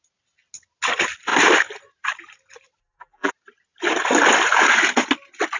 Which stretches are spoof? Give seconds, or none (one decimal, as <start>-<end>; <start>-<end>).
2.8-3.3